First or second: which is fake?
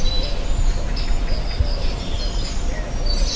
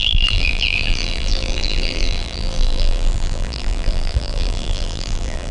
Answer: second